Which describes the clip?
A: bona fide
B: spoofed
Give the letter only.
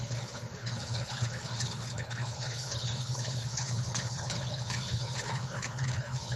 B